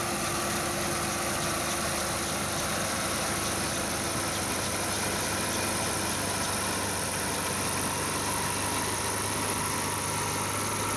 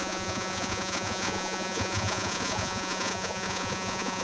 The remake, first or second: second